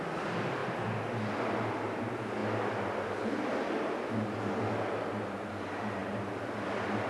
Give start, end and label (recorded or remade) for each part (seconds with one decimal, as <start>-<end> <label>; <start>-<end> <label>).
0.0-7.1 recorded

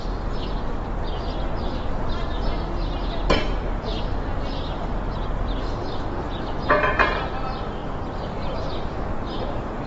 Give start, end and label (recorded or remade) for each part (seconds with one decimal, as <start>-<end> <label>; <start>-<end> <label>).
0.0-9.9 recorded

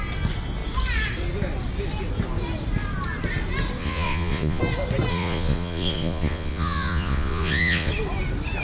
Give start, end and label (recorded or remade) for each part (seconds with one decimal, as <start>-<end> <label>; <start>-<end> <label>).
0.0-3.8 recorded; 3.8-4.6 remade; 4.6-5.1 recorded; 5.1-7.9 remade; 7.9-8.6 recorded

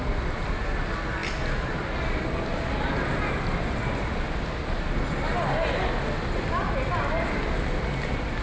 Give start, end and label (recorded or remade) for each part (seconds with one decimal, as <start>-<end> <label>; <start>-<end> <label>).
0.0-8.4 recorded

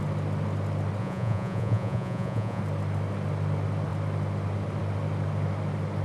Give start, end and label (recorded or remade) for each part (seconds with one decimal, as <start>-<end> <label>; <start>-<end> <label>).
0.0-1.0 recorded; 1.0-2.6 remade; 2.6-6.0 recorded

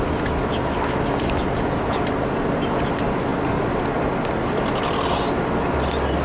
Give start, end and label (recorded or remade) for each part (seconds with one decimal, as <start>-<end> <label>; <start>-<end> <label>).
0.0-6.2 recorded

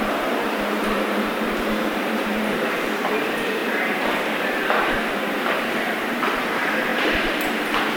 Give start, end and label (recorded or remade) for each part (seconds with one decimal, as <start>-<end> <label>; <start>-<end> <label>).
0.0-8.0 remade